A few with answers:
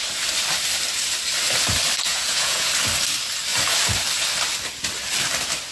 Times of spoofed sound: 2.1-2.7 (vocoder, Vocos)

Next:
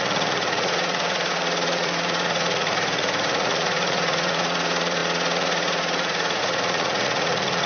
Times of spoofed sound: 0.0-7.7 (vocoder, Vocos)

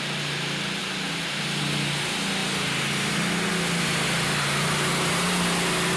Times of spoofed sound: none

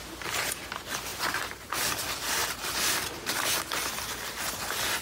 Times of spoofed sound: 1.1-1.8 (vocoder, BigVGAN v2)